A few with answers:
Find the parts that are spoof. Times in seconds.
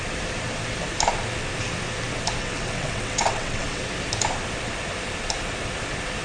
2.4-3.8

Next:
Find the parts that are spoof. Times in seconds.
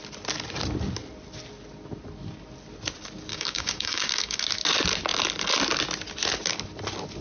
3.3-4.4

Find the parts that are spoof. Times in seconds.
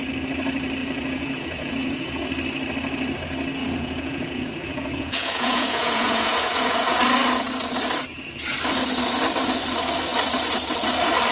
0.8-2.3; 3.6-7.0